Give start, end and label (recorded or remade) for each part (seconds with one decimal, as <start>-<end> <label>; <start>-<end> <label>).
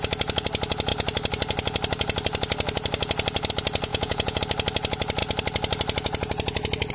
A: 0.0-3.9 recorded; 3.9-4.4 remade; 4.4-6.9 recorded